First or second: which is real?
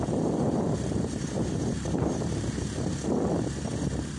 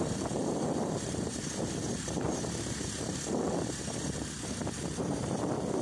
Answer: first